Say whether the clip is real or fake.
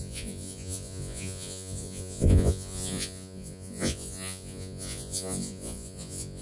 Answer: fake